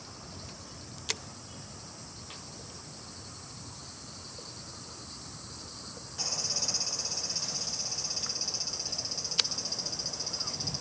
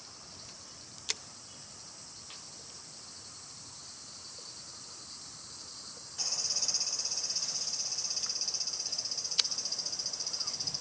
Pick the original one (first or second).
first